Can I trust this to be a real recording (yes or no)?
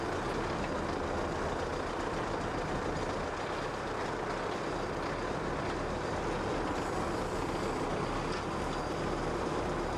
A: yes